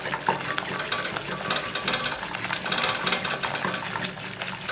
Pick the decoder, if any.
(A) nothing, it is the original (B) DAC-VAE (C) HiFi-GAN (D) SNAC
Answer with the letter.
A